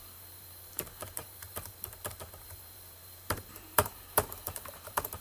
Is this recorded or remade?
remade